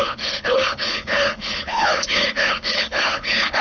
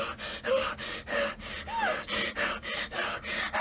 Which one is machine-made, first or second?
first